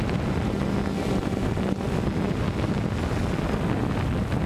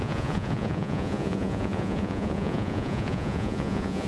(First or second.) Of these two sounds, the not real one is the second